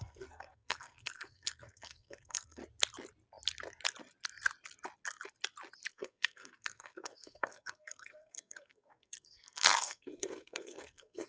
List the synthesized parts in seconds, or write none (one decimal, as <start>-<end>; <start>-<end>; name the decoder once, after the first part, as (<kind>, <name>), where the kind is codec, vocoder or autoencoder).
0.0-2.6 (codec, SNAC); 5.9-11.3